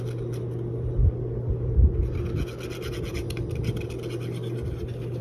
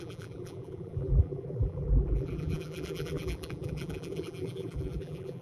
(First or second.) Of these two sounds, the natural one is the first